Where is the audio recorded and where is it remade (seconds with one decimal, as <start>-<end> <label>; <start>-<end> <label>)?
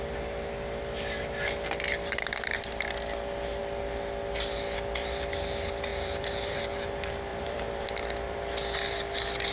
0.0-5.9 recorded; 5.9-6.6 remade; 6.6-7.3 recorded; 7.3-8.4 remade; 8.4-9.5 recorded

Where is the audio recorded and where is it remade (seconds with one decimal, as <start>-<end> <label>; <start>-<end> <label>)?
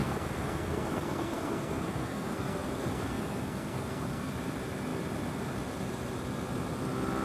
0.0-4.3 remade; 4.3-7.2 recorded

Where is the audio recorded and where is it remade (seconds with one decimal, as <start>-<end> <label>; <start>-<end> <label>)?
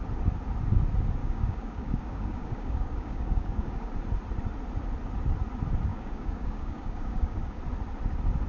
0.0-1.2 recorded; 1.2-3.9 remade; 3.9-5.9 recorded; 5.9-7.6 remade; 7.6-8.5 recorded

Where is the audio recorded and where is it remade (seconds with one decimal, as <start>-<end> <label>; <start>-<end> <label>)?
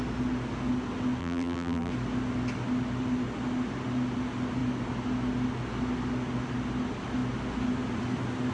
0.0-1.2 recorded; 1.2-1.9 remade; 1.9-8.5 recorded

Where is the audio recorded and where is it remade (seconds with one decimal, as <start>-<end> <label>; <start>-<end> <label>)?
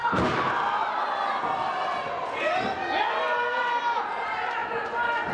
0.0-5.3 recorded